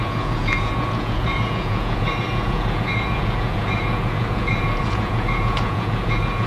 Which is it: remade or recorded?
remade